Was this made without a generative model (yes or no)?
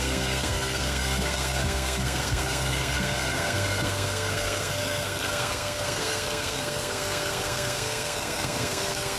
no